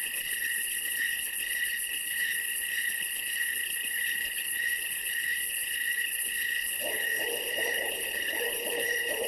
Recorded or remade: remade